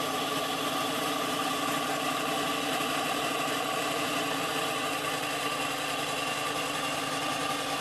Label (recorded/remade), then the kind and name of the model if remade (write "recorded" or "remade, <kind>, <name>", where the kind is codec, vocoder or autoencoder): remade, vocoder, BigVGAN v2